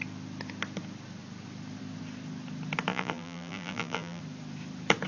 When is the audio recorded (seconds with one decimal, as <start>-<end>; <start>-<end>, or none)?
0.0-2.9; 4.2-5.1